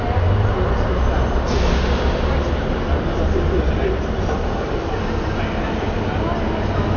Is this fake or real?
real